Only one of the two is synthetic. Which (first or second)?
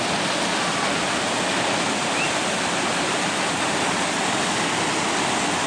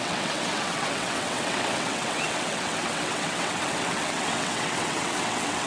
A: second